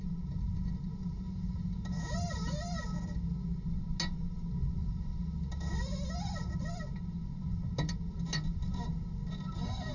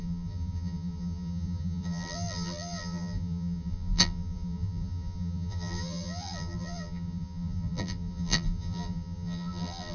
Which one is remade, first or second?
second